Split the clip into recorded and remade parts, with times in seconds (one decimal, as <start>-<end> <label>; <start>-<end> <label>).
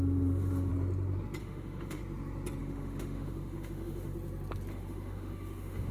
0.0-0.7 remade; 0.7-1.4 recorded; 1.4-2.0 remade; 2.0-2.6 recorded; 2.6-4.1 remade; 4.1-4.7 recorded; 4.7-5.9 remade